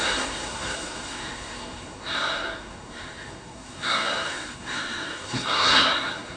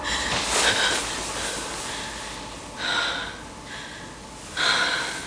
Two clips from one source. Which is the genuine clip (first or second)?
second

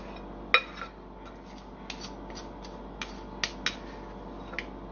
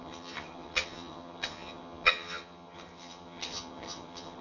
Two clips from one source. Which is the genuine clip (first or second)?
first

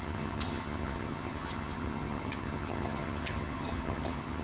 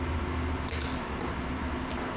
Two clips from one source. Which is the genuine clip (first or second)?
second